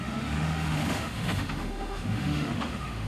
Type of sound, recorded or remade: remade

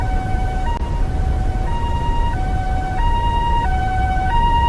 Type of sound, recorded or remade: recorded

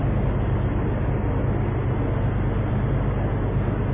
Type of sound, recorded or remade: recorded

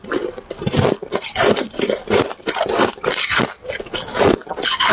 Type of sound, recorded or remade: remade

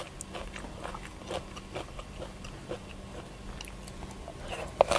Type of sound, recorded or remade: recorded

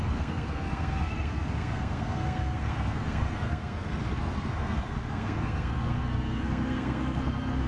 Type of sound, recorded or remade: remade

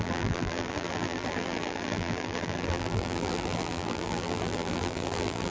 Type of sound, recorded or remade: remade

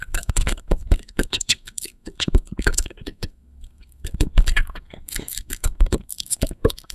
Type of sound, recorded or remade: remade